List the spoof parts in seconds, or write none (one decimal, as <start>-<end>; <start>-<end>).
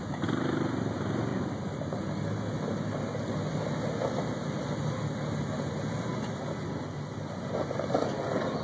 none